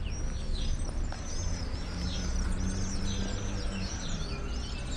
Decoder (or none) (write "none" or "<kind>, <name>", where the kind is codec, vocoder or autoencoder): none